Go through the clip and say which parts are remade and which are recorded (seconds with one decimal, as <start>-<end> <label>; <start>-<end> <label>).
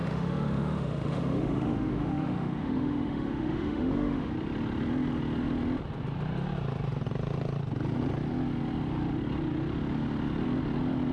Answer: 0.0-4.3 remade; 4.3-11.1 recorded